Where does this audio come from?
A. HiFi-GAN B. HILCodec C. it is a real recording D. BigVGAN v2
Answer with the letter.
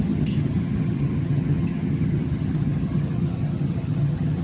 A